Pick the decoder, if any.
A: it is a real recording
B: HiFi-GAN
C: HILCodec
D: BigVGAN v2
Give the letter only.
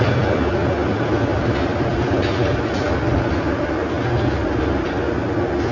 A